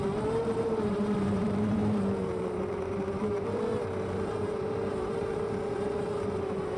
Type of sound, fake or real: fake